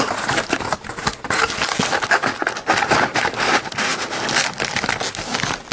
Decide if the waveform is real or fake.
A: real